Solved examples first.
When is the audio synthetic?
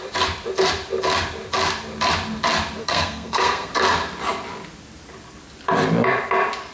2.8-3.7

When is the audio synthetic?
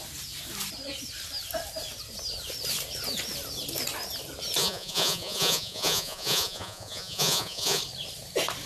4.6-7.8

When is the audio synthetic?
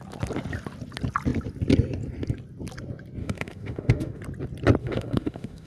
3.2-4.2; 4.8-5.7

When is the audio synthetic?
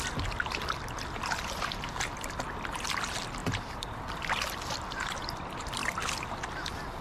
3.4-4.0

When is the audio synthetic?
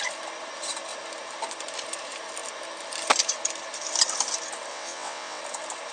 4.7-5.4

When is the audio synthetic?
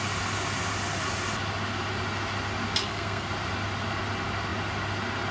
2.8-3.3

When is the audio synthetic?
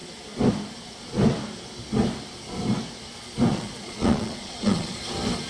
3.5-5.0